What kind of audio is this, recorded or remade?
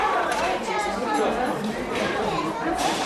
remade